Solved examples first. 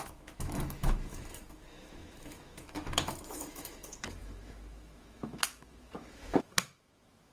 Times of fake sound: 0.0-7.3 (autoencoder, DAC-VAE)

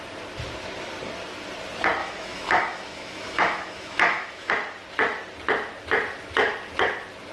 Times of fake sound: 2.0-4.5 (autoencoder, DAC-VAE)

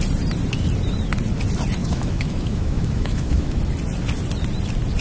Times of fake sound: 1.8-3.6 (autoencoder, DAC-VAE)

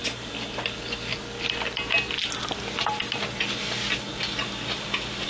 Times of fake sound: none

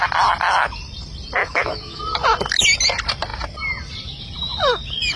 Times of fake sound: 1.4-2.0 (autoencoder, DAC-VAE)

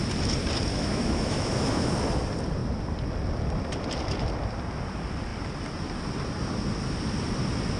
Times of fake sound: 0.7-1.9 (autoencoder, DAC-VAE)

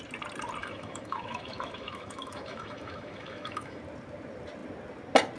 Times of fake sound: 0.6-3.8 (autoencoder, DAC-VAE)